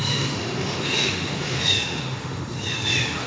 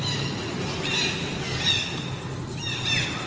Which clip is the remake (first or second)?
first